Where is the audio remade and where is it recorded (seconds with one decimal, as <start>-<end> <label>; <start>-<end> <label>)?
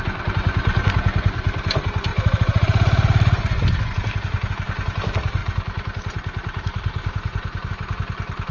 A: 0.0-2.1 recorded; 2.1-4.5 remade; 4.5-5.4 recorded; 5.4-7.7 remade; 7.7-8.5 recorded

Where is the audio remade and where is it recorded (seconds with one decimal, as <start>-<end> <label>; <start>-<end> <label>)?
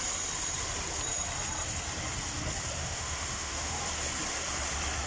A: 0.0-2.8 recorded; 2.8-3.8 remade; 3.8-5.1 recorded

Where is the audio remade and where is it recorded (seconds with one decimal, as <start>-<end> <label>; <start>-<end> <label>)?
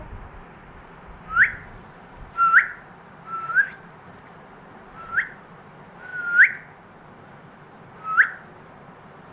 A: 0.0-1.6 recorded; 1.6-5.1 remade; 5.1-9.3 recorded